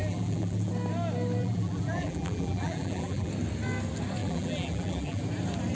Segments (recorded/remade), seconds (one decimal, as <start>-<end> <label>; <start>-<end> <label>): 0.0-0.7 remade; 0.7-1.4 recorded; 1.4-3.3 remade; 3.3-4.2 recorded; 4.2-5.2 remade; 5.2-5.7 recorded